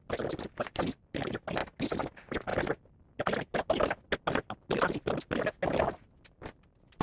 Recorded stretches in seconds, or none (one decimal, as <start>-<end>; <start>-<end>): 0.0-7.0